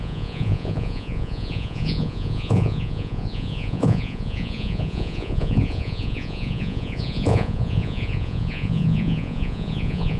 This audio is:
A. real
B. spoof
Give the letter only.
B